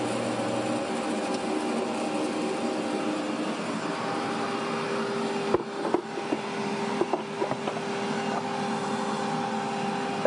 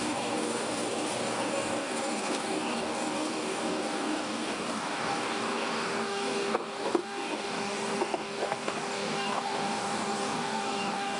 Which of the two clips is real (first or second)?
first